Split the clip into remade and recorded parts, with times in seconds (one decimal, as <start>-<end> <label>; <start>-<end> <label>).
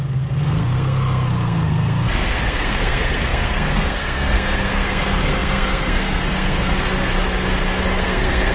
0.0-7.1 remade; 7.1-7.8 recorded; 7.8-8.5 remade